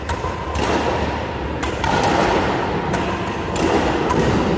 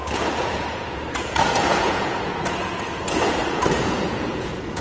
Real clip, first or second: first